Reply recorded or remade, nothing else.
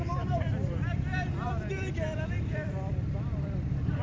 remade